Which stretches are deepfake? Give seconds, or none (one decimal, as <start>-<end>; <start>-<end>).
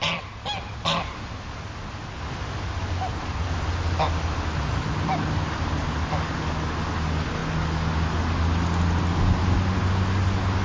none